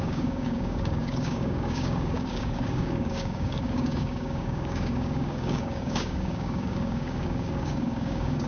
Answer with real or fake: fake